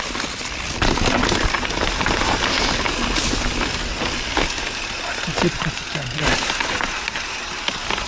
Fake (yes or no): no